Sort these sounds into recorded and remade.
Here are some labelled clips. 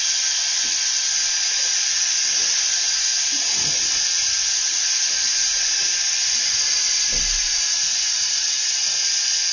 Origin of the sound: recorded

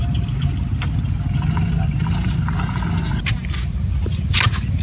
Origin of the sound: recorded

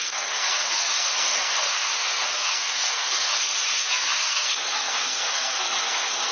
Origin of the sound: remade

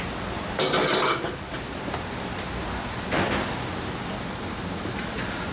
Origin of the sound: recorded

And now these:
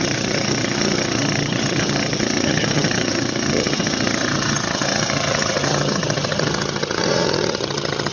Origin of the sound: remade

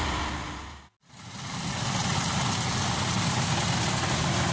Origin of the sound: recorded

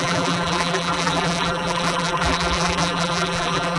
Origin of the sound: remade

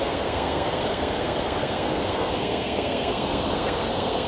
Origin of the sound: remade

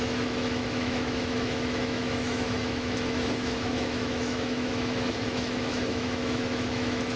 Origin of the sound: remade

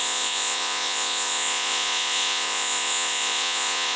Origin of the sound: remade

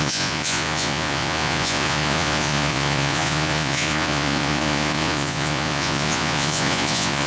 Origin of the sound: remade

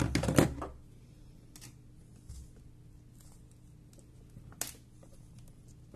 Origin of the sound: recorded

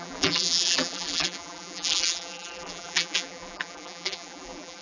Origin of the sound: remade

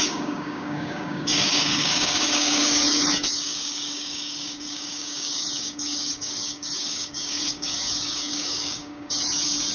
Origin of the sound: remade